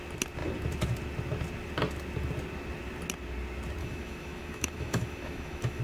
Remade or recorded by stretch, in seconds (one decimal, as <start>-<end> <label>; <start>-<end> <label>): 0.0-3.8 recorded; 3.8-5.8 remade